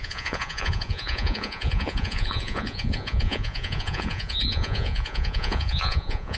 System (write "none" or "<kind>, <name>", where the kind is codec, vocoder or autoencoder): vocoder, Vocos